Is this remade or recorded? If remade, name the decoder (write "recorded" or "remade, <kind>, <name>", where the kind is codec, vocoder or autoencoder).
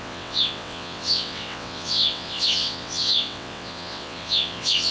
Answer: remade, vocoder, WaveNeXt